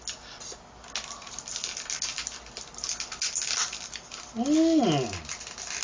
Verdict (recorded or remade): recorded